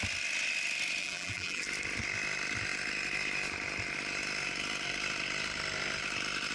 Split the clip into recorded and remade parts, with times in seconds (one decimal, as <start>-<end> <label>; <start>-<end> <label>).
0.0-1.0 recorded; 1.0-1.6 remade; 1.6-6.5 recorded